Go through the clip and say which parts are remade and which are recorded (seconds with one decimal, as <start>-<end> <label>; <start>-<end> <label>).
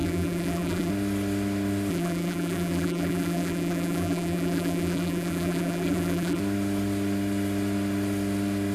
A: 0.0-0.9 remade; 0.9-1.9 recorded; 1.9-6.4 remade; 6.4-8.7 recorded